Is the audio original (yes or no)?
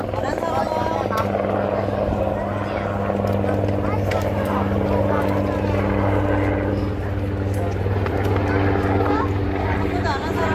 yes